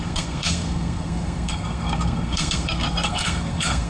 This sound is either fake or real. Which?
fake